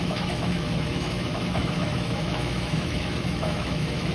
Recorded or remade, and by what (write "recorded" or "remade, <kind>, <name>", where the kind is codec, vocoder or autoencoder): remade, autoencoder, DAC-VAE